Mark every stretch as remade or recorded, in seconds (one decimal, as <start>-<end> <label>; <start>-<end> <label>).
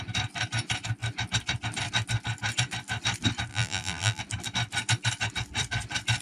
0.0-3.5 recorded; 3.5-4.2 remade; 4.2-6.2 recorded